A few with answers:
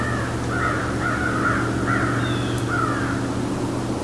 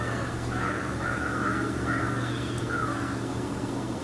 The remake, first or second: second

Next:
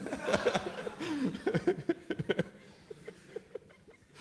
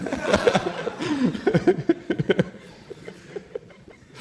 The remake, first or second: second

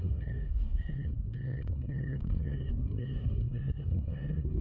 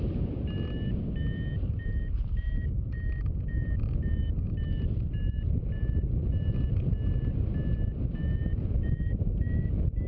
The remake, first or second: first